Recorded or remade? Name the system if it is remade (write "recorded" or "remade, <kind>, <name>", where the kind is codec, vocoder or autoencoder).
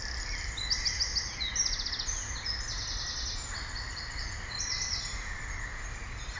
recorded